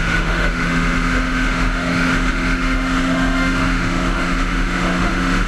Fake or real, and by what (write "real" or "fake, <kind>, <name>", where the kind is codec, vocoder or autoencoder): fake, autoencoder, DAC-VAE